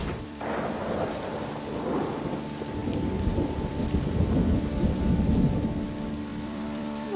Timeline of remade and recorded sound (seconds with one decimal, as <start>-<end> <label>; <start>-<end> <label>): 0.0-1.3 remade; 1.3-2.8 recorded; 2.8-5.4 remade; 5.4-6.3 recorded; 6.3-7.2 remade